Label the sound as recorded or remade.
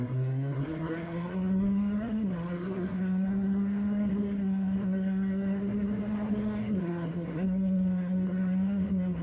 remade